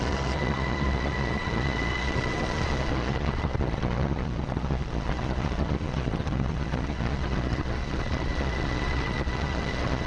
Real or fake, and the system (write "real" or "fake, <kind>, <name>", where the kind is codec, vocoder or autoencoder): fake, vocoder, Vocos